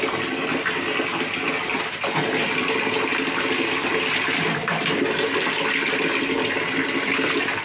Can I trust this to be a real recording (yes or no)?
yes